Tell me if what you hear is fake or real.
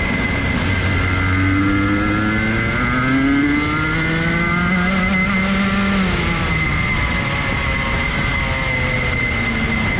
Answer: real